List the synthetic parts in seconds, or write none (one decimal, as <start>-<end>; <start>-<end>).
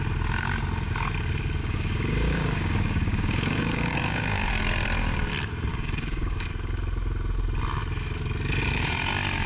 1.6-4.5; 5.7-6.5